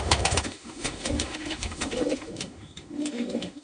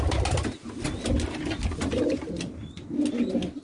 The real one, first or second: second